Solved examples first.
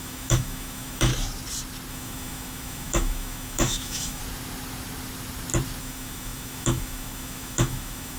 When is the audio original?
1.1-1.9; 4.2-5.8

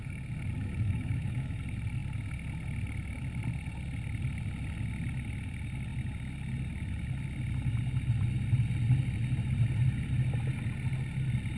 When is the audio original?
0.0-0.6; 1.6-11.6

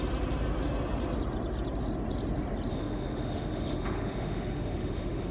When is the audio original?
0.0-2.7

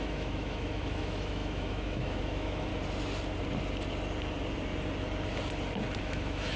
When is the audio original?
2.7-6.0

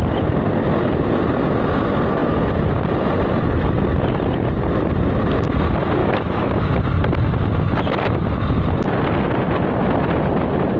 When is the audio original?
0.0-6.0; 6.7-10.8

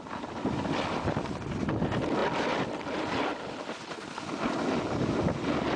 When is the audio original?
0.0-5.8